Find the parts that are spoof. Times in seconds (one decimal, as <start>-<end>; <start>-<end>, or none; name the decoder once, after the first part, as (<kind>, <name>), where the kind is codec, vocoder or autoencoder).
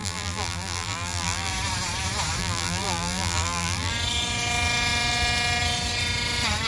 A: 0.0-1.5 (vocoder, BigVGAN v2); 2.4-3.9